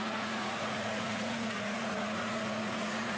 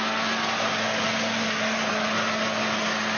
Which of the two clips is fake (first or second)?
first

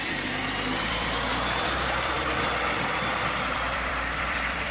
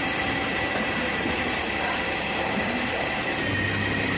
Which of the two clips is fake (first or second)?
first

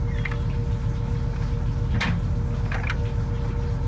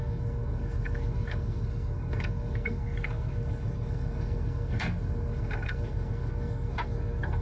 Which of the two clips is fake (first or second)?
second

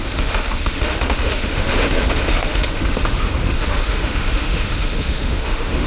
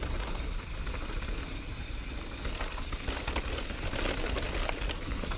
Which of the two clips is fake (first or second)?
first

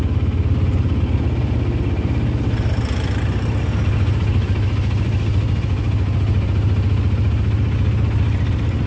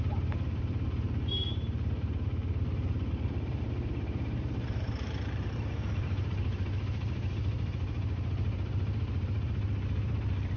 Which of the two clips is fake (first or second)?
second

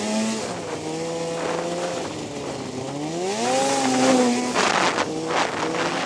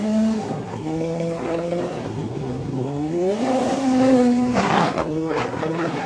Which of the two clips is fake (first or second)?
second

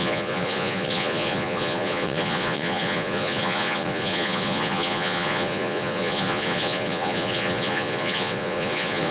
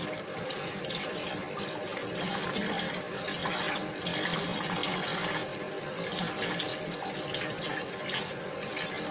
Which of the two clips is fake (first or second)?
first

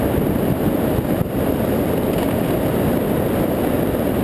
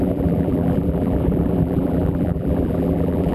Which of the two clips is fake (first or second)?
second